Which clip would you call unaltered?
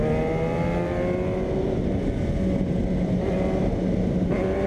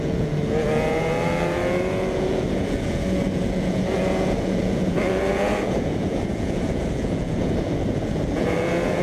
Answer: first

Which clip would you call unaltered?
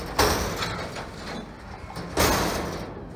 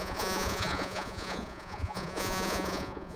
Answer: first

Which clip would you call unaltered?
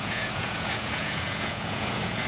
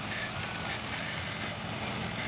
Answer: second